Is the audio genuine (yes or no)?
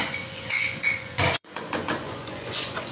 no